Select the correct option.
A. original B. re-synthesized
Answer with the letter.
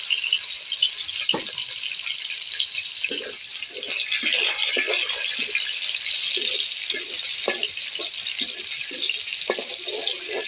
A